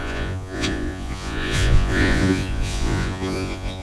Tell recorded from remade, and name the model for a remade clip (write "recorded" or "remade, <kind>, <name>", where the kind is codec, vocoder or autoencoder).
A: remade, vocoder, Vocos